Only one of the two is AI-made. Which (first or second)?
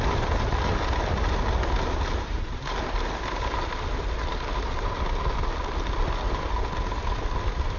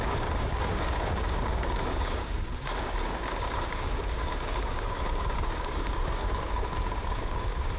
second